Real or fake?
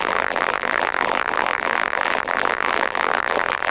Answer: fake